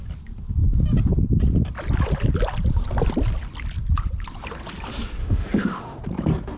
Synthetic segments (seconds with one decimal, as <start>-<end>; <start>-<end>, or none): 5.2-6.0